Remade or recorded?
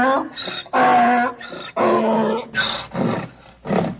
recorded